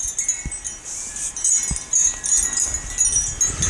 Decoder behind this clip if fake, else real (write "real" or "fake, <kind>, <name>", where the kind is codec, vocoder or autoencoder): real